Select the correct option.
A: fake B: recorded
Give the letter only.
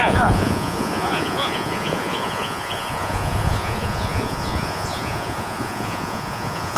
A